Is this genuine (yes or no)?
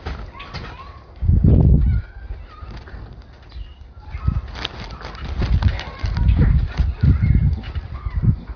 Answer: yes